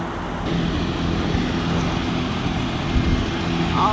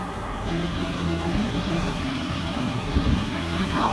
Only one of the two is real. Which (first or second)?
first